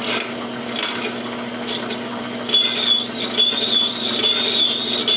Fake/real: real